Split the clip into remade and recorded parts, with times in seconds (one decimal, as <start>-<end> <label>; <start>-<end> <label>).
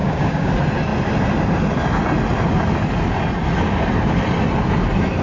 0.0-0.5 remade; 0.5-5.2 recorded